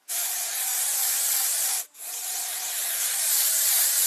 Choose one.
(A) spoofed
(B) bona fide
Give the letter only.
A